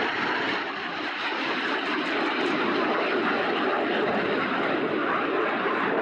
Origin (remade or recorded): remade